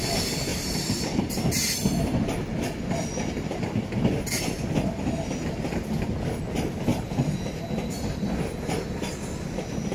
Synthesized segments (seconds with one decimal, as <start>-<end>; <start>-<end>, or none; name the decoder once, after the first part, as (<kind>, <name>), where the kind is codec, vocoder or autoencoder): 0.5-1.2 (vocoder, BigVGAN v2); 6.9-7.5